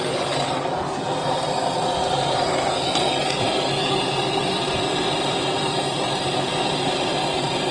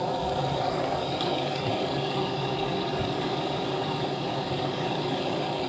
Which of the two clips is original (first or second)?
first